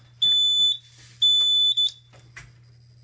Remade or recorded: recorded